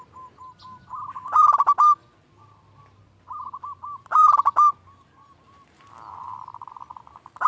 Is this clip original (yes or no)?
yes